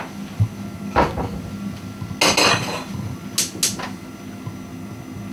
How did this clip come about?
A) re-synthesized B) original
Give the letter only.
B